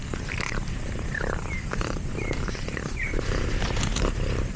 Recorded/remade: remade